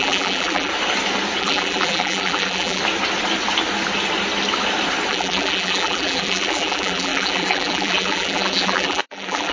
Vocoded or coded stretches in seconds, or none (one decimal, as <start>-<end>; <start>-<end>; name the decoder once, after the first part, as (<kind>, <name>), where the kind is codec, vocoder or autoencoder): 0.0-0.7 (vocoder, BigVGAN v2); 1.4-2.8; 5.1-9.5